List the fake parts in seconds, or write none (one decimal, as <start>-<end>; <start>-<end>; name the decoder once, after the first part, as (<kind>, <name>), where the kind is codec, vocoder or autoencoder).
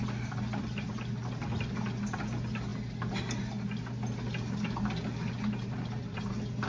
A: none